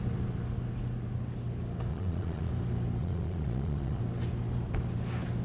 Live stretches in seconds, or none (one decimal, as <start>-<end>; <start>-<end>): 0.0-1.9; 2.5-3.0; 4.0-5.4